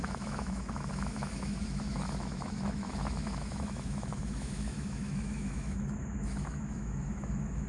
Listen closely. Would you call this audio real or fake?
fake